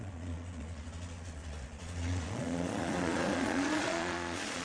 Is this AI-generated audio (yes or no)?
yes